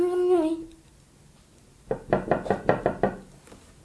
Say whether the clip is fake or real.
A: real